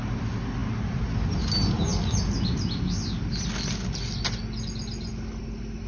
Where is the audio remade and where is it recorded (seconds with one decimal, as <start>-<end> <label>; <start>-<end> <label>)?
0.0-5.9 recorded